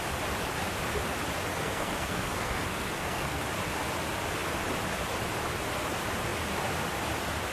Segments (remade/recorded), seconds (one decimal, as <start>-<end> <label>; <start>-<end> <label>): 0.0-1.5 recorded; 1.5-3.4 remade; 3.4-7.5 recorded